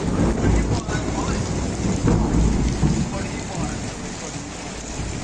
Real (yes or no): yes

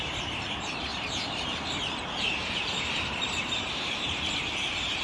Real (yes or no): no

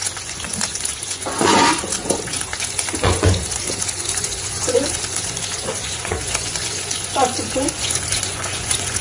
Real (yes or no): no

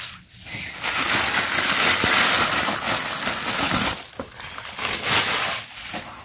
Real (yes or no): yes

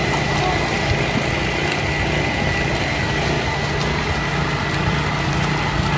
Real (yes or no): yes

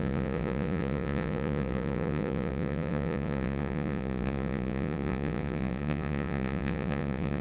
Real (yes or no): no